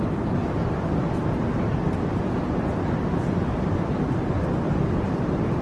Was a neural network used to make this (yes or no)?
yes